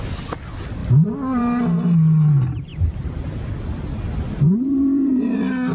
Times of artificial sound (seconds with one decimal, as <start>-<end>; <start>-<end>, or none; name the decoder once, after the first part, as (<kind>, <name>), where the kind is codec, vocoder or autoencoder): 0.8-1.4 (vocoder, BigVGAN v2); 2.7-3.3